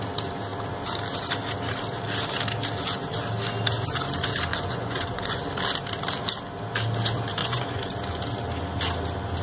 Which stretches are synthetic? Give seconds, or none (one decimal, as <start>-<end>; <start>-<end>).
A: 4.5-5.4; 7.4-7.9